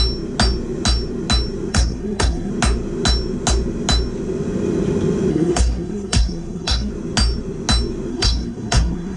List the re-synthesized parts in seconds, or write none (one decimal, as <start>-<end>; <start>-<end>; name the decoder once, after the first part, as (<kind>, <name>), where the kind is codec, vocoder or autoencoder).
1.7-2.5 (codec, SNAC); 5.3-6.9; 8.1-9.2